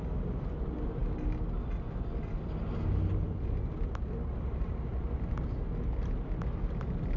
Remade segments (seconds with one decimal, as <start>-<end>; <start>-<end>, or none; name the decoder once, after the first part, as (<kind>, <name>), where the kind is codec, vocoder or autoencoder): none